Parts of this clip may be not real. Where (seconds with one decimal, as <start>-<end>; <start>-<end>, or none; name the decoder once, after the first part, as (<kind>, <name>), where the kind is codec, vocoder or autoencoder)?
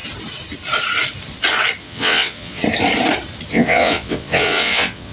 1.8-2.6 (vocoder, WaveNeXt); 3.5-5.1